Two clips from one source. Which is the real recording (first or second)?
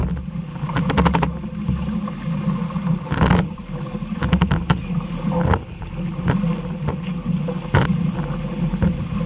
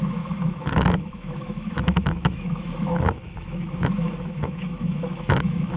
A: first